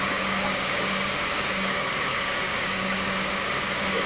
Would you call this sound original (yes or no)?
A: no